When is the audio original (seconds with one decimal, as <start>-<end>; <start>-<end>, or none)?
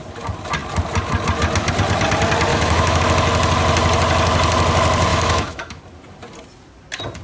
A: 0.0-2.5; 3.0-5.1; 5.8-7.2